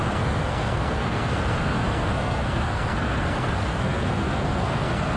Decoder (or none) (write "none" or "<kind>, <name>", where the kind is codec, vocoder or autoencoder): codec, SNAC